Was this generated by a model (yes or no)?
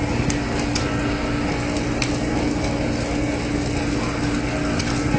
no